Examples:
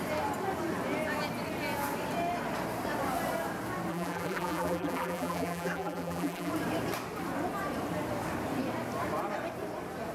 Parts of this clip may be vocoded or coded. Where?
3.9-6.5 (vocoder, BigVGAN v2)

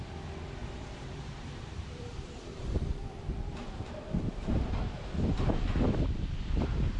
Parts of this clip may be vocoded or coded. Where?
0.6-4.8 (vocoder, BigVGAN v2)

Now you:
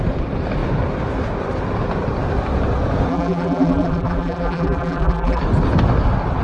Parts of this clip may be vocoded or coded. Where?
3.1-5.4 (vocoder, BigVGAN v2)